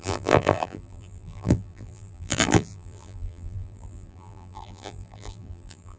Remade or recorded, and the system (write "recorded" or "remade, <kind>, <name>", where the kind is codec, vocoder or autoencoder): remade, vocoder, BigVGAN v2